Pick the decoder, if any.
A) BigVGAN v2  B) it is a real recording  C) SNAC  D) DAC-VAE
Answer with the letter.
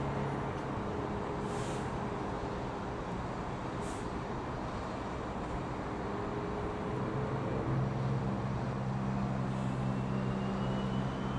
B